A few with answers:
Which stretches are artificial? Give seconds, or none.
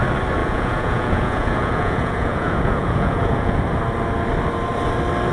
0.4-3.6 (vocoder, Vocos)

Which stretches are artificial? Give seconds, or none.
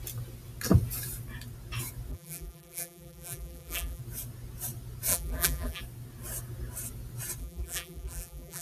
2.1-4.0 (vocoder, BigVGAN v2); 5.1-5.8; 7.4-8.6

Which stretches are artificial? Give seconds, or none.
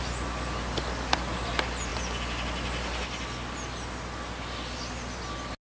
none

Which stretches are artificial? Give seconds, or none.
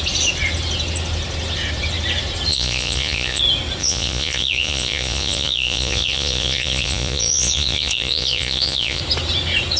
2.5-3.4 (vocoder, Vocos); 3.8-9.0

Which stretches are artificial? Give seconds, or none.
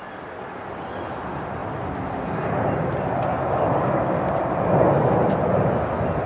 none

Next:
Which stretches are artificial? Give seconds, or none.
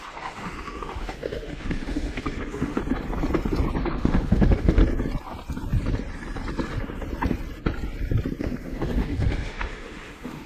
0.0-2.8 (autoencoder, DAC-VAE); 3.8-4.8; 8.4-10.5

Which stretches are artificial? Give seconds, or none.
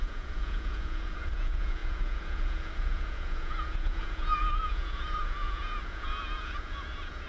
0.0-7.3 (vocoder, Vocos)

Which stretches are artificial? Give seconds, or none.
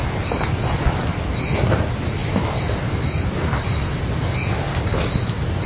2.2-4.1 (vocoder, BigVGAN v2)